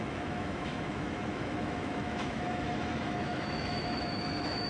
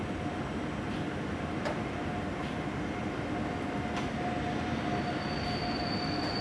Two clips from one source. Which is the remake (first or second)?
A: first